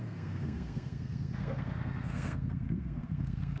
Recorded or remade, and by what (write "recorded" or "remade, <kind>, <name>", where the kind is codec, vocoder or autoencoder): remade, codec, SNAC